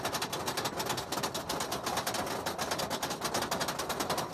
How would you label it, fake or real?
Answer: real